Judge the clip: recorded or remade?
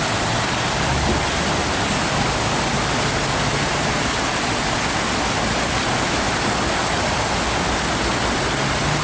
recorded